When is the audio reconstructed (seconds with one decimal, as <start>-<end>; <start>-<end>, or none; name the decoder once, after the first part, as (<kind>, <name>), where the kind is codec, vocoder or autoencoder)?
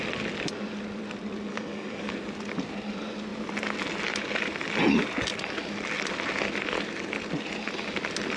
1.5-2.1 (codec, DAC)